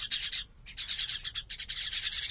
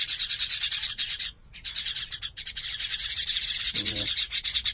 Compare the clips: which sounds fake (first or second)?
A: second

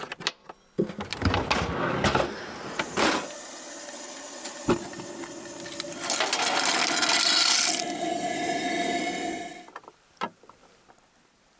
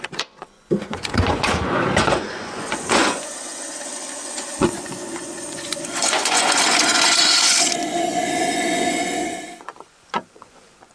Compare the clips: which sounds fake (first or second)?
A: second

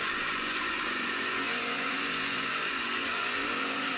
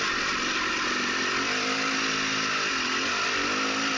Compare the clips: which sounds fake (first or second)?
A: first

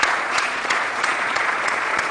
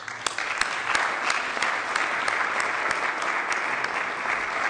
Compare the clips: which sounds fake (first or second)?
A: first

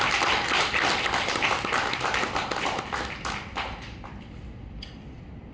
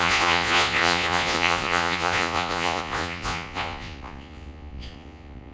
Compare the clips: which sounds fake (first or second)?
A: second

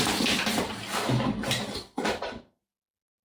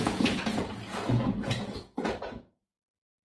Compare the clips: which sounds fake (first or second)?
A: second